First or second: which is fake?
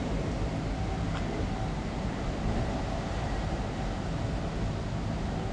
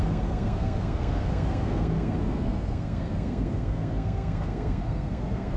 second